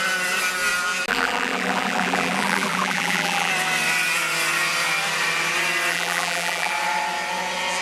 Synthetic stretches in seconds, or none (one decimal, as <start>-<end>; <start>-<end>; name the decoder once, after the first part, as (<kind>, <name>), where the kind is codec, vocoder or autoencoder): 1.1-3.5 (vocoder, BigVGAN v2); 5.9-6.7